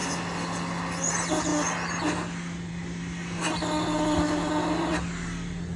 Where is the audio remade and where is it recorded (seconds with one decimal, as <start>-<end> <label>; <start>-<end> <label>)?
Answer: 0.0-5.8 recorded